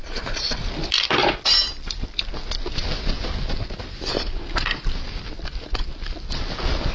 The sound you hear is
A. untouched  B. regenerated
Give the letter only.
A